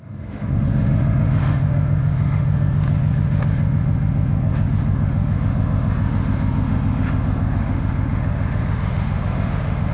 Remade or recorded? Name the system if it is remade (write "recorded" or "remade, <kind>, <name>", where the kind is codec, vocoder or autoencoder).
remade, autoencoder, DAC-VAE